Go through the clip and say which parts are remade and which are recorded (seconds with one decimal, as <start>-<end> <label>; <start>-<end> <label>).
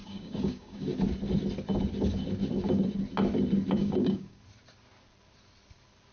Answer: 0.0-0.9 remade; 0.9-3.8 recorded; 3.8-4.4 remade; 4.4-6.1 recorded